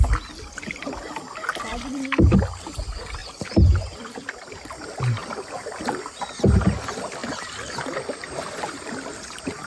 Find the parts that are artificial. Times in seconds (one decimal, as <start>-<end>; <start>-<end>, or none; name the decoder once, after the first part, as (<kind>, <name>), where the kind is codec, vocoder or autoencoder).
1.7-2.4 (vocoder, BigVGAN v2); 3.2-4.8; 5.2-6.5; 7.2-9.2